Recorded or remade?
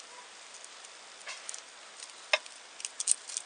recorded